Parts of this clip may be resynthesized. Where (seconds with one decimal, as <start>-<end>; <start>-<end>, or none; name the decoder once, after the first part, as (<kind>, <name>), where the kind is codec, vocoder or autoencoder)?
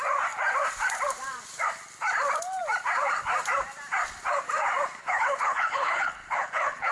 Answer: 5.0-6.9 (codec, HILCodec)